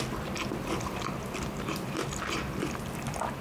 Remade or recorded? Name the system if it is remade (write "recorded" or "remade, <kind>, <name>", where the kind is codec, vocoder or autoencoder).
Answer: remade, vocoder, BigVGAN v2